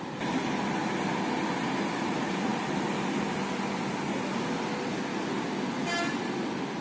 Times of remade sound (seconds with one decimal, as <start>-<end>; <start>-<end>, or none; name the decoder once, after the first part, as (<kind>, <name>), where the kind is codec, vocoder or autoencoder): none